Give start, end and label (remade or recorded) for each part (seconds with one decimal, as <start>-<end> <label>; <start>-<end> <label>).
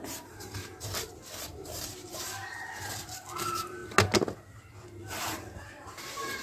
0.0-0.7 remade; 0.7-1.4 recorded; 1.4-2.4 remade; 2.4-2.9 recorded; 2.9-3.8 remade; 3.8-5.2 recorded; 5.2-6.4 remade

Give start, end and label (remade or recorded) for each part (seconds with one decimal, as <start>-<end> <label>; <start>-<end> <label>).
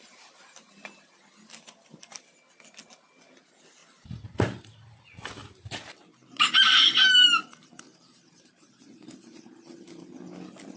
0.0-3.8 recorded; 3.8-5.0 remade; 5.0-5.4 recorded; 5.4-9.7 remade; 9.7-10.8 recorded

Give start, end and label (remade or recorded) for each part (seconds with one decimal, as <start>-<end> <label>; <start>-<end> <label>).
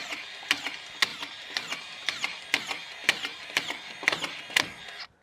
0.0-1.1 recorded; 1.1-2.4 remade; 2.4-3.0 recorded; 3.0-3.6 remade; 3.6-5.2 recorded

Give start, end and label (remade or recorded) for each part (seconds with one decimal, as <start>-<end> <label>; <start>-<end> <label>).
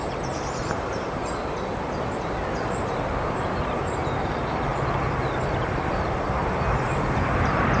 0.0-1.7 remade; 1.7-3.8 recorded; 3.8-4.7 remade; 4.7-5.6 recorded; 5.6-7.8 remade